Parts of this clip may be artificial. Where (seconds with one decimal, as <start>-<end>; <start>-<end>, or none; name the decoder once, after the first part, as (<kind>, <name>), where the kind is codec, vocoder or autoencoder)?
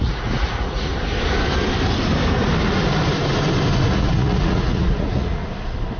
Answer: 0.0-0.9 (vocoder, Vocos); 3.9-5.4